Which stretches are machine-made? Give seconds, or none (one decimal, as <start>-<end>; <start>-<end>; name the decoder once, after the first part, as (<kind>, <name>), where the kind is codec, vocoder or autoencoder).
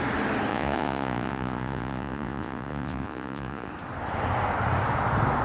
0.5-3.7 (vocoder, Vocos)